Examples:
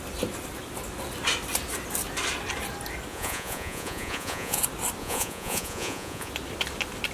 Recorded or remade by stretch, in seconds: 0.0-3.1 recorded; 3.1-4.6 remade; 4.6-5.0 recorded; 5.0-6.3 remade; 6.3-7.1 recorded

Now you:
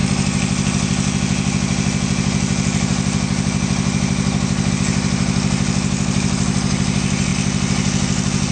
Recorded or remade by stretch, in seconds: 0.0-8.5 recorded

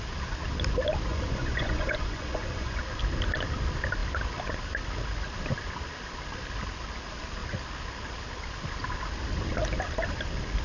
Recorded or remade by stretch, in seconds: 0.0-1.1 recorded; 1.1-2.8 remade; 2.8-10.6 recorded

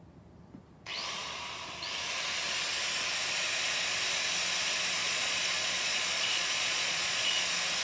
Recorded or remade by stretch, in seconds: 0.0-5.0 recorded; 5.0-7.3 remade; 7.3-7.8 recorded

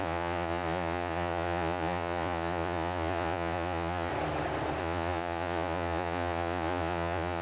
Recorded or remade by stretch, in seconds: 0.0-4.1 remade; 4.1-4.8 recorded; 4.8-7.4 remade

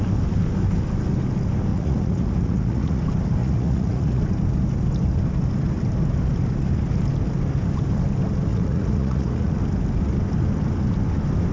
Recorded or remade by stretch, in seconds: 0.0-1.7 recorded; 1.7-3.0 remade; 3.0-3.4 recorded; 3.4-4.2 remade; 4.2-8.5 recorded; 8.5-9.6 remade; 9.6-11.5 recorded